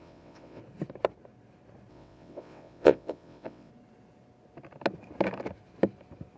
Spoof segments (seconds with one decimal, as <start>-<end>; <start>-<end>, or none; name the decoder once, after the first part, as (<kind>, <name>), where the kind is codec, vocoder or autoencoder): 0.0-0.6 (vocoder, WaveNeXt); 1.9-3.7